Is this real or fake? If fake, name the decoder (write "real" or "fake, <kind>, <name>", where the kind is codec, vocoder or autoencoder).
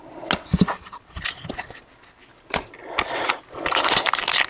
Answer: real